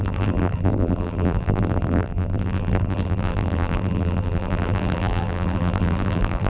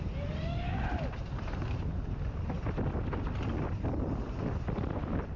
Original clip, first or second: second